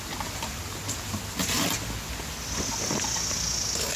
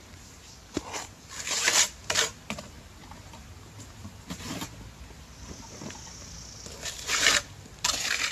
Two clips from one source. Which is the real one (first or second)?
first